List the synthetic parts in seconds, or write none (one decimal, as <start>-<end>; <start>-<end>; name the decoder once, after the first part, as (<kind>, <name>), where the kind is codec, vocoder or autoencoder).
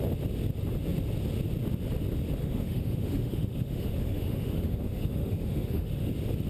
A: 2.4-6.1 (autoencoder, DAC-VAE)